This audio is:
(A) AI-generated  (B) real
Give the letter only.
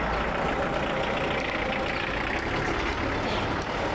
B